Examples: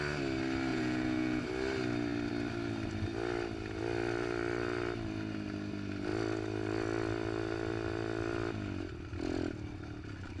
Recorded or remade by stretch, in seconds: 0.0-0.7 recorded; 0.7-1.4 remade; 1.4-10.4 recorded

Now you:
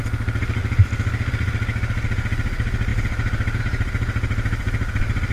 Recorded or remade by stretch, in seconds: 0.0-2.9 recorded; 2.9-3.6 remade; 3.6-5.3 recorded

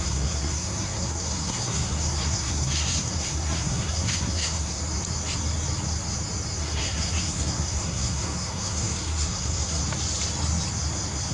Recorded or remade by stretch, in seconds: 0.0-4.8 remade; 4.8-6.6 recorded; 6.6-9.8 remade; 9.8-11.3 recorded